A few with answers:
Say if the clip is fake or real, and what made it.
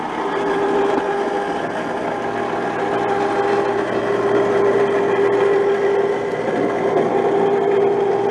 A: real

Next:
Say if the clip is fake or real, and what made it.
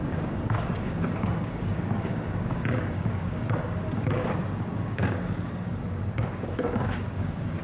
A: fake, codec, DAC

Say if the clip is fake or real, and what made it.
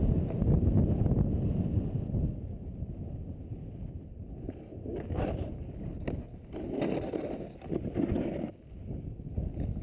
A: real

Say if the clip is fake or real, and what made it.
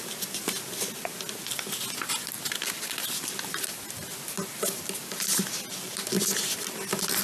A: real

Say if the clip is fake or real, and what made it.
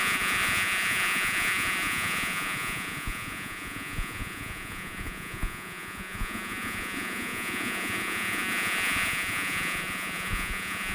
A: fake, vocoder, Vocos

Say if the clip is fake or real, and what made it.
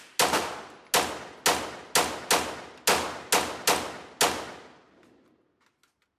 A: real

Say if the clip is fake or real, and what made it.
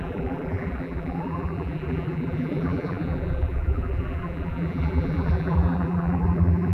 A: fake, vocoder, BigVGAN v2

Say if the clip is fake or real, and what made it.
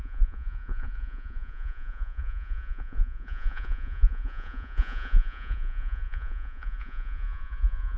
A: fake, vocoder, Vocos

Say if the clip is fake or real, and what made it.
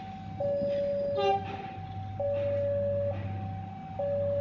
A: real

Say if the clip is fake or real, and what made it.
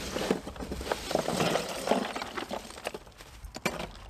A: real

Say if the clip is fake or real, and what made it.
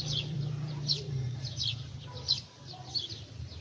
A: fake, vocoder, BigVGAN v2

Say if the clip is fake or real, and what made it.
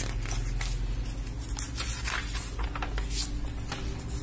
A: real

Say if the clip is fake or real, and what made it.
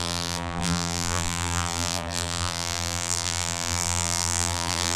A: fake, vocoder, BigVGAN v2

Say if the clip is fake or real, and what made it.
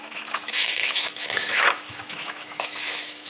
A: fake, autoencoder, DAC-VAE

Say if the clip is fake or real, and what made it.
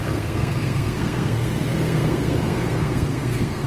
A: fake, codec, SNAC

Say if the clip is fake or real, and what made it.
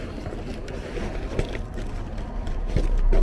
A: real